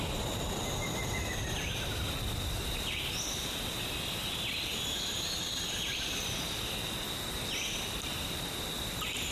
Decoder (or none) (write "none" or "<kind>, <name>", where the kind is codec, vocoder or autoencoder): none